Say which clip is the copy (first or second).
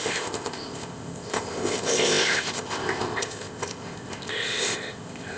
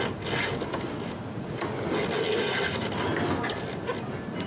first